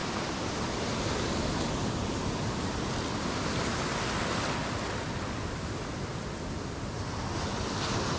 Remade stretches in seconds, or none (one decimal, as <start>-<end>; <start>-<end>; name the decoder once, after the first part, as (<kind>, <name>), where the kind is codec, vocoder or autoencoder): none